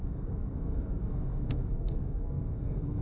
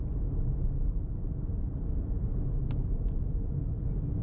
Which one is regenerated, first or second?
first